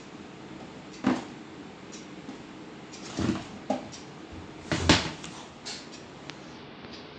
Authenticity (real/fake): real